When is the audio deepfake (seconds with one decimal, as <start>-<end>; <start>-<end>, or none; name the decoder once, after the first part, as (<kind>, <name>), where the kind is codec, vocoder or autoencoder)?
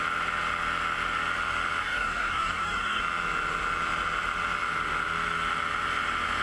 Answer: 1.8-3.0 (codec, DAC)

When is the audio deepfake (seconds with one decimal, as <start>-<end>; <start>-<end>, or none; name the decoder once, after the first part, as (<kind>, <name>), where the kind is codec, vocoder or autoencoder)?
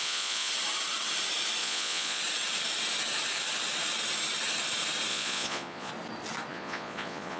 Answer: 0.0-0.5 (vocoder, Vocos); 1.6-2.2; 5.1-5.9; 6.5-7.4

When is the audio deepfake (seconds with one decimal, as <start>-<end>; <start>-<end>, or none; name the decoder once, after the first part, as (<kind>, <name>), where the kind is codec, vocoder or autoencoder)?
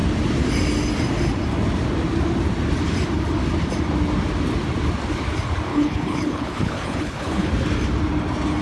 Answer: 5.7-7.5 (codec, HILCodec)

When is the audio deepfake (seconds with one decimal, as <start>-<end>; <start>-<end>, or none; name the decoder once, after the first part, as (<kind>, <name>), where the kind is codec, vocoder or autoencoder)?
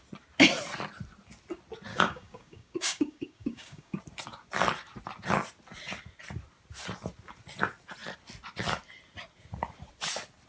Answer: 1.9-4.0 (codec, DAC)